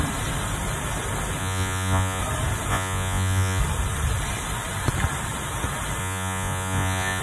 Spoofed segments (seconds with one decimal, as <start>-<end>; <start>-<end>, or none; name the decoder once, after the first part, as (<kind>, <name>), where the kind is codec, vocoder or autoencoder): 1.4-2.2 (vocoder, Vocos); 2.7-3.6; 6.0-7.2